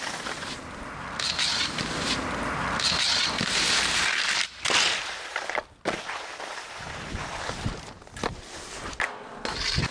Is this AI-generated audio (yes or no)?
no